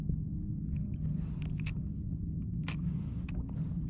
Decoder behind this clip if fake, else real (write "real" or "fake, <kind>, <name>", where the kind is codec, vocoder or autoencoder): real